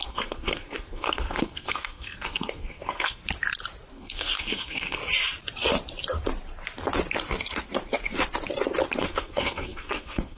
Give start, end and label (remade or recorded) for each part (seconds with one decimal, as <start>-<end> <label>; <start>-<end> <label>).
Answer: 0.0-3.2 remade; 3.2-3.9 recorded; 3.9-5.0 remade; 5.0-9.0 recorded; 9.0-10.4 remade